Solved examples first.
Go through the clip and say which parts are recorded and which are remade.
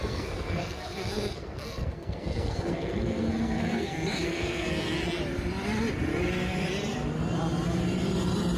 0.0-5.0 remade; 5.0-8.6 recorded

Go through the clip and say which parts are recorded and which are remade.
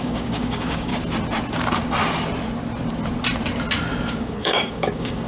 0.0-0.9 remade; 0.9-4.1 recorded; 4.1-5.3 remade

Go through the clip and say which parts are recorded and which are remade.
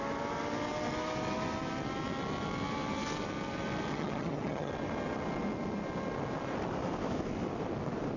0.0-3.9 recorded; 3.9-4.7 remade; 4.7-8.2 recorded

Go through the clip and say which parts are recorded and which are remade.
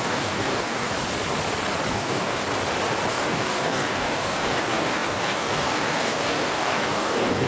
0.0-0.9 remade; 0.9-1.9 recorded; 1.9-2.4 remade; 2.4-3.1 recorded; 3.1-7.5 remade